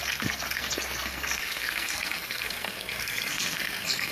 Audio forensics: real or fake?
fake